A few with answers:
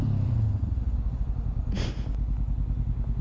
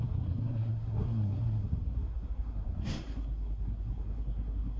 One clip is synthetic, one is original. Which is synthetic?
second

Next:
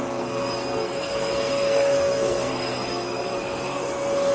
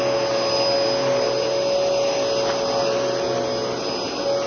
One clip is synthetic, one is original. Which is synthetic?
first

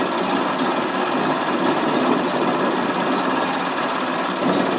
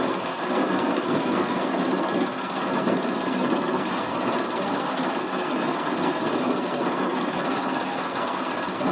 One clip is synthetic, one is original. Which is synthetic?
second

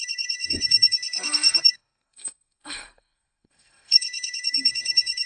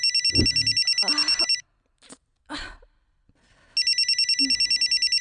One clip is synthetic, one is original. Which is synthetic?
first